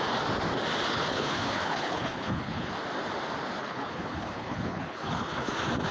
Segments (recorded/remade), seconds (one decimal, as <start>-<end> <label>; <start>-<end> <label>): 0.0-0.9 recorded; 0.9-2.7 remade; 2.7-3.6 recorded; 3.6-5.5 remade; 5.5-5.9 recorded